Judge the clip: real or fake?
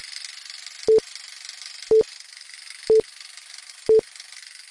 real